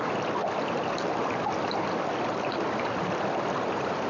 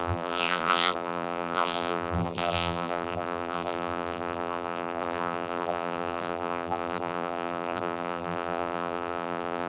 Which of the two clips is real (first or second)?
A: first